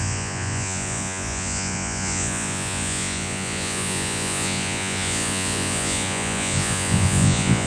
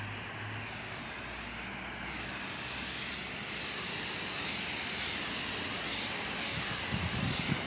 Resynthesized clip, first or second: first